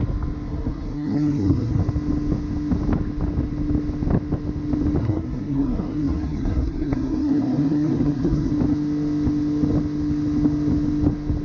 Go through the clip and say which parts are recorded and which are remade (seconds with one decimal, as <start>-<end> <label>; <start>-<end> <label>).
0.0-0.5 recorded; 0.5-1.8 remade; 1.8-5.0 recorded; 5.0-8.5 remade; 8.5-11.4 recorded